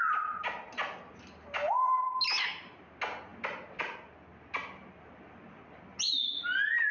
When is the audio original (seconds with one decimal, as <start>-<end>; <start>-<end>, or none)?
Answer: 0.0-6.9